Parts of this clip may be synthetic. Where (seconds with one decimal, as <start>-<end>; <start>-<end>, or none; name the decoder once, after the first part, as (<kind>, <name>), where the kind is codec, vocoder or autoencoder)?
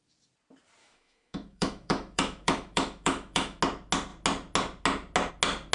0.8-3.6 (autoencoder, DAC-VAE)